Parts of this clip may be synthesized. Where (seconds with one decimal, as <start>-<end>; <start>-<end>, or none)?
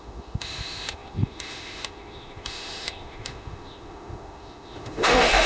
0.0-5.5